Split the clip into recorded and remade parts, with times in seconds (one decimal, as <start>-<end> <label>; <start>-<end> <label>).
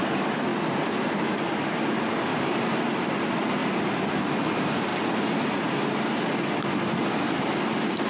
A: 0.0-2.3 recorded; 2.3-2.9 remade; 2.9-8.1 recorded